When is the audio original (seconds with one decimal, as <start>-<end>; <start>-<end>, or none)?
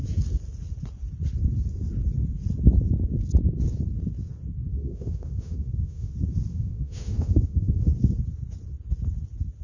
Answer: 0.0-4.7; 6.1-6.5; 7.9-9.6